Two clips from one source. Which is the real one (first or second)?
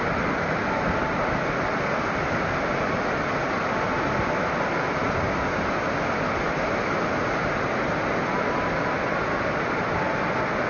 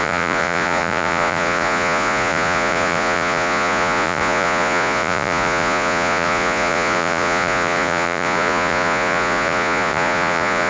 first